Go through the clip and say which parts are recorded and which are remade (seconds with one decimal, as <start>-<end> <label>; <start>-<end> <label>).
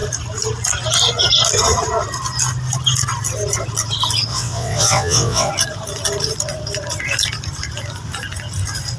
0.0-4.3 recorded; 4.3-5.5 remade; 5.5-9.0 recorded